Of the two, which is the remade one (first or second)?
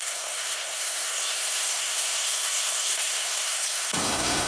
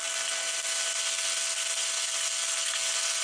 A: first